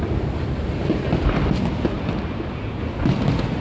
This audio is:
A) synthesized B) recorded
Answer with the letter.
B